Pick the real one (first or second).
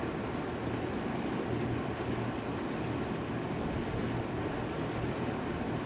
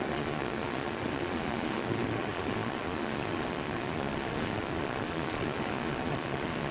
first